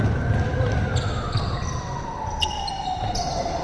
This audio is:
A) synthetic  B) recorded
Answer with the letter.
B